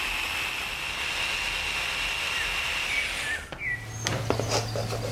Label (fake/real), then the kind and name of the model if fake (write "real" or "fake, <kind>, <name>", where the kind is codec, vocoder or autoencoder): real